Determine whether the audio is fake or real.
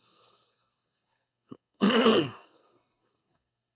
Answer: fake